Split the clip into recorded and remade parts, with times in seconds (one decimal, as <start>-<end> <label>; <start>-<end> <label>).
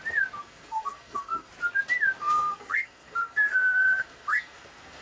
0.0-0.4 recorded; 0.4-1.5 remade; 1.5-2.2 recorded; 2.2-5.0 remade